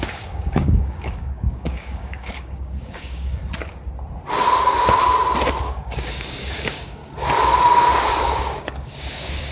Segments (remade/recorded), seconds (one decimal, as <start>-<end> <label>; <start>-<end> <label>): 0.0-3.4 remade; 3.4-5.6 recorded; 5.6-7.0 remade; 7.0-8.1 recorded; 8.1-9.5 remade